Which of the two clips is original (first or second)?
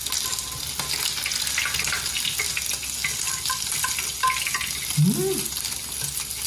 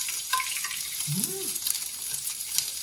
first